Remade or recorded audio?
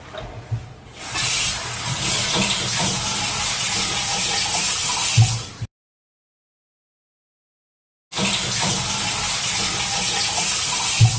recorded